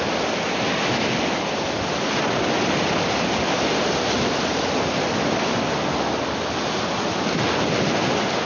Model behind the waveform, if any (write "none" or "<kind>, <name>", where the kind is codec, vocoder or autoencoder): none